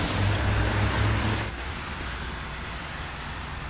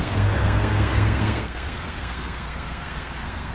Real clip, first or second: first